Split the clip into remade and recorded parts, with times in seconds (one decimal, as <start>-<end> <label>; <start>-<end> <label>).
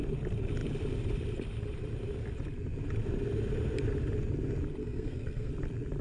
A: 0.0-4.8 recorded; 4.8-5.5 remade; 5.5-6.0 recorded